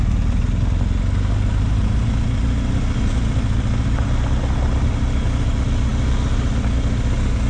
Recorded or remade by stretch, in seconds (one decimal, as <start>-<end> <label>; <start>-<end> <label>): 0.0-7.5 recorded